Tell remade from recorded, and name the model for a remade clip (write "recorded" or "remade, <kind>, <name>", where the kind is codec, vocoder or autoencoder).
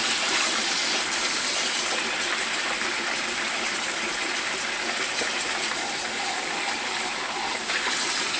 remade, vocoder, BigVGAN v2